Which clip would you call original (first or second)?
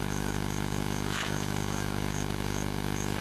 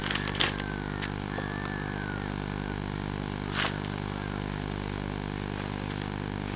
second